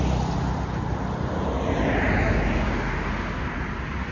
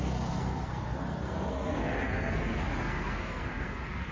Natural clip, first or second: first